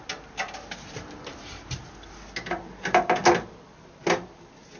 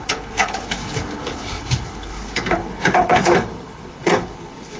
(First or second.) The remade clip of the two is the second